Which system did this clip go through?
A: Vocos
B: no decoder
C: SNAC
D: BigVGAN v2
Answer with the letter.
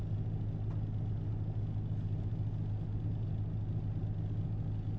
B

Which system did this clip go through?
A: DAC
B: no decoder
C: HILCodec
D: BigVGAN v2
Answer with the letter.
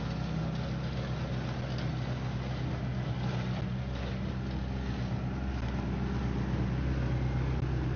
B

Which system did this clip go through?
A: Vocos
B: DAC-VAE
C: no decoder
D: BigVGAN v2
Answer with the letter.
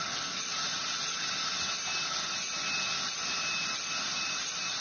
C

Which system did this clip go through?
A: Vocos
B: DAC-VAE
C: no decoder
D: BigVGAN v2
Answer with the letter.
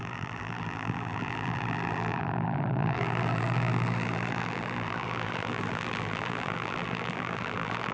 D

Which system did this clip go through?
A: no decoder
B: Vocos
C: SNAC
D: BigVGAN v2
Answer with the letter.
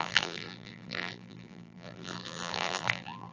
D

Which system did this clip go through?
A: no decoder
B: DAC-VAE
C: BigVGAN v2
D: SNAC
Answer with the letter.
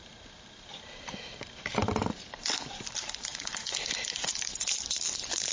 C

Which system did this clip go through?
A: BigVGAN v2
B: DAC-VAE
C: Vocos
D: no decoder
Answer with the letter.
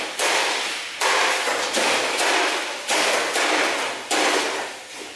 D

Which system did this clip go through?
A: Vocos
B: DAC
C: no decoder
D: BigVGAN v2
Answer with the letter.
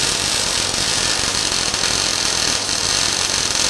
C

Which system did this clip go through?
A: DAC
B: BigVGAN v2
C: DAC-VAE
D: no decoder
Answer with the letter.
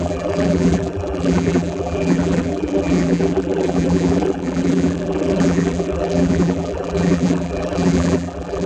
B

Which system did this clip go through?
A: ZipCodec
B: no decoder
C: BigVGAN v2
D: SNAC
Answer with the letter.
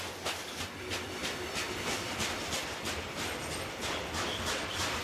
C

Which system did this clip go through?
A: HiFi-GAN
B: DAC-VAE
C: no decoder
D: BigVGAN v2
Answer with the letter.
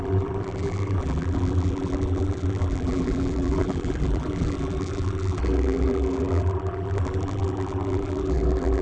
D